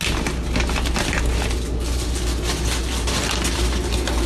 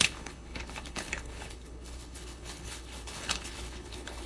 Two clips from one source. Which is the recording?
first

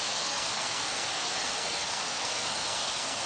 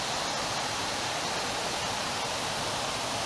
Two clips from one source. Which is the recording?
second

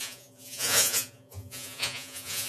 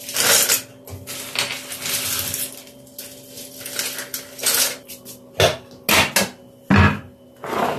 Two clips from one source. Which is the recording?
second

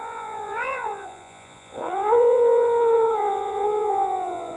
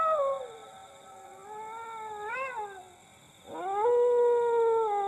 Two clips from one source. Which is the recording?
second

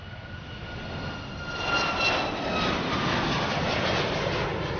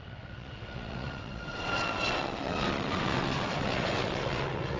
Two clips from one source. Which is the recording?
first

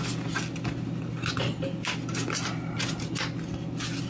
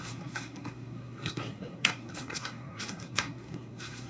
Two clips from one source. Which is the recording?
first